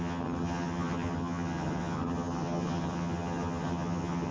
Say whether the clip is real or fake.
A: fake